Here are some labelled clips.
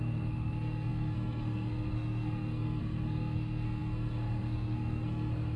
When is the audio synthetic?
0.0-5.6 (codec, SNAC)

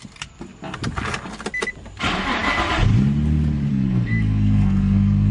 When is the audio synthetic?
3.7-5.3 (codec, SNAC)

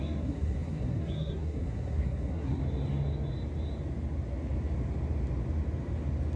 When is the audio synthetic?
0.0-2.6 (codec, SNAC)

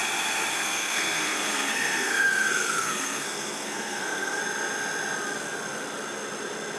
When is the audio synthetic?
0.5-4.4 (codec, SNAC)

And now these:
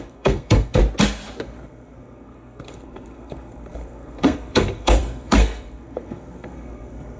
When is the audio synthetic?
0.0-0.8 (codec, SNAC); 1.4-7.2

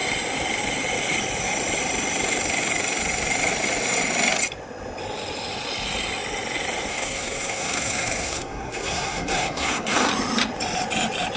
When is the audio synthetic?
6.9-10.1 (codec, SNAC)

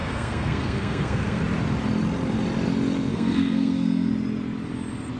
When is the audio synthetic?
0.0-1.4 (codec, SNAC); 3.1-4.1

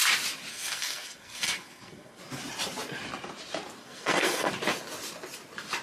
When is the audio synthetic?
0.5-2.2 (codec, SNAC); 3.8-4.5